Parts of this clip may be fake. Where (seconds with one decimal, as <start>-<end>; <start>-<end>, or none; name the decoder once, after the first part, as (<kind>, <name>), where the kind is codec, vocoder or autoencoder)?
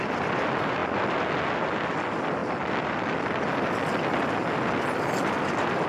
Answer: none